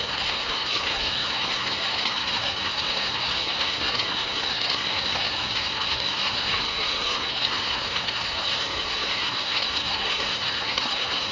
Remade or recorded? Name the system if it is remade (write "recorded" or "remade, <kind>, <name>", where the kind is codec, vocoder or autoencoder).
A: remade, codec, SNAC